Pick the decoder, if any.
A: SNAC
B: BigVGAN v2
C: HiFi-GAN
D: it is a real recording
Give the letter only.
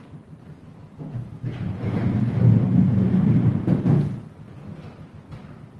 D